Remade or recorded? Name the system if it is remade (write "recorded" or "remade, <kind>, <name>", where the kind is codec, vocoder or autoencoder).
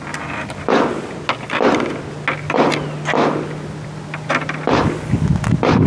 recorded